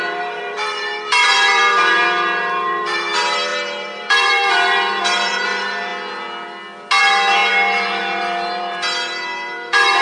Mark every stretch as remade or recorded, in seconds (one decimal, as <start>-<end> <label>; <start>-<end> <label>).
0.0-5.9 remade; 5.9-7.0 recorded; 7.0-10.0 remade